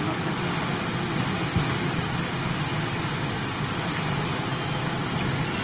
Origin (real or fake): real